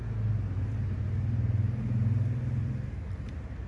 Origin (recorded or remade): recorded